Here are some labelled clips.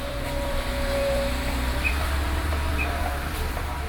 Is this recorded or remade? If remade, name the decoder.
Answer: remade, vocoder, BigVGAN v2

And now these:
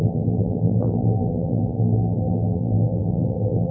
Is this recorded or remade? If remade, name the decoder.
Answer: remade, vocoder, BigVGAN v2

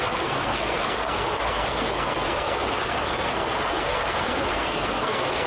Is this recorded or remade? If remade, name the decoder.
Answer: remade, codec, SNAC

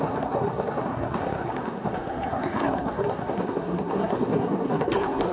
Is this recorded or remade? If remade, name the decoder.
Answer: remade, codec, SNAC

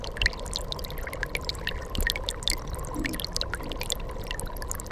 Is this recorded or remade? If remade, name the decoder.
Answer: recorded